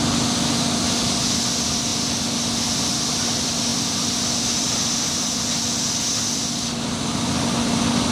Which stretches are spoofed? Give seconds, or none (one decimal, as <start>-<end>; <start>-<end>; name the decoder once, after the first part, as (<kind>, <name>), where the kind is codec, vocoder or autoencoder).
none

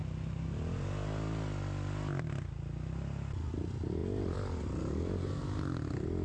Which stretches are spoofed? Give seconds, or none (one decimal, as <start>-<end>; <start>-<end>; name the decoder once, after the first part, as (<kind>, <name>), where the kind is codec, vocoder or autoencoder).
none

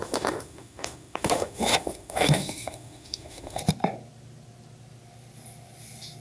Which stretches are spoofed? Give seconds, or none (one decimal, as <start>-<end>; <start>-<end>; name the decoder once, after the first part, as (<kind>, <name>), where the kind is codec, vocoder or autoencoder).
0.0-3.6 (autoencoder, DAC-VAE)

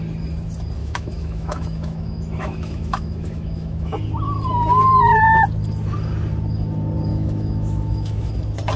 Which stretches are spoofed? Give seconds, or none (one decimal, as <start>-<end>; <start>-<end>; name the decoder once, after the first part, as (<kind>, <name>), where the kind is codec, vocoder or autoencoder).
0.8-3.9 (autoencoder, DAC-VAE); 7.1-8.3

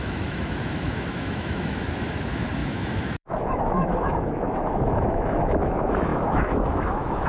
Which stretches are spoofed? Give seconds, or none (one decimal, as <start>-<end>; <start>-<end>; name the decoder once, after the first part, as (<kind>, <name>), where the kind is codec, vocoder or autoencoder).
0.0-7.3 (autoencoder, DAC-VAE)

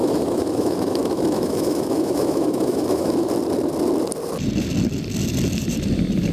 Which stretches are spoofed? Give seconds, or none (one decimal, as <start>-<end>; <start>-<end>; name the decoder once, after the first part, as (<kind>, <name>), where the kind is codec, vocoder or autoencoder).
0.0-3.3 (autoencoder, DAC-VAE)

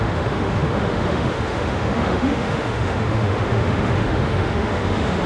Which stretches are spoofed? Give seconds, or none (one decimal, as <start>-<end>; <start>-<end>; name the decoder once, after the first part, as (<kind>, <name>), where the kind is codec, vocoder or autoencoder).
0.0-5.3 (autoencoder, DAC-VAE)